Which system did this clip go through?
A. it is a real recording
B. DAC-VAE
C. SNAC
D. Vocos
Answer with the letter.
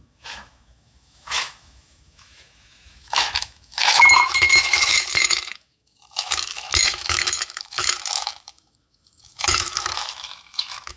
B